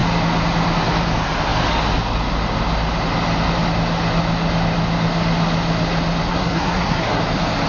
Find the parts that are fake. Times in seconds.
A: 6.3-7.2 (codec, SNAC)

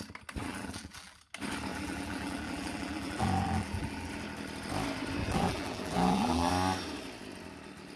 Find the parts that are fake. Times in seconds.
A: 0.4-1.2 (vocoder, BigVGAN v2); 1.7-4.1; 5.2-6.5

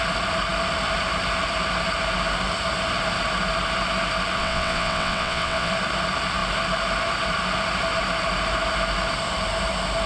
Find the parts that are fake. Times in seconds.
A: 4.4-5.7 (vocoder, WaveNeXt)

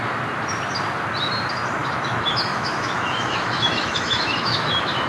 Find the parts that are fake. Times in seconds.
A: 1.8-5.1 (autoencoder, DAC-VAE)